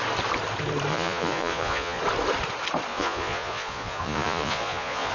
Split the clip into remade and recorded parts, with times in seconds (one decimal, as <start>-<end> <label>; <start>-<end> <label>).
0.0-0.9 recorded; 0.9-2.0 remade; 2.0-2.9 recorded; 2.9-5.1 remade